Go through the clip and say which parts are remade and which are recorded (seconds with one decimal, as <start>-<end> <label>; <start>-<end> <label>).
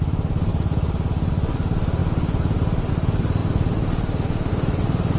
0.0-0.5 remade; 0.5-1.3 recorded; 1.3-3.4 remade; 3.4-4.5 recorded; 4.5-5.2 remade